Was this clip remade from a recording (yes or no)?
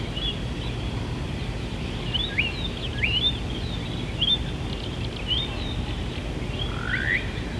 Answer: yes